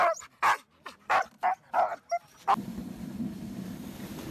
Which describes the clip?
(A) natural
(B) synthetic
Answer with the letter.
A